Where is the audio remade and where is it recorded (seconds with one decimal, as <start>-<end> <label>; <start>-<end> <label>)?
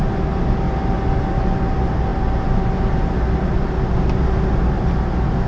0.0-5.5 recorded